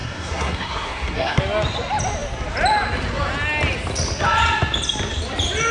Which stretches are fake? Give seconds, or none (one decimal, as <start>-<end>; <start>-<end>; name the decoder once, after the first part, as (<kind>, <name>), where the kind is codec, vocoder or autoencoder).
0.0-1.4 (codec, SNAC)